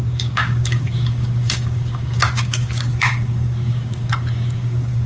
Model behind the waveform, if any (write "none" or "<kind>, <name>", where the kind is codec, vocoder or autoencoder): codec, DAC